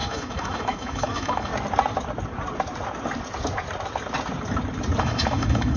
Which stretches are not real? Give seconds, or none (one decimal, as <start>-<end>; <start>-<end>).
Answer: 0.0-1.5; 5.0-5.8